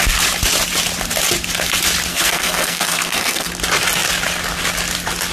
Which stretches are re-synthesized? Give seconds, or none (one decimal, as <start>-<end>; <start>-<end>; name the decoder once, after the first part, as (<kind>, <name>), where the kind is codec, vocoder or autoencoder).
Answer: 2.1-3.5 (codec, SNAC)